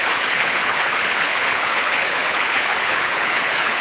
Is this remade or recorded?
remade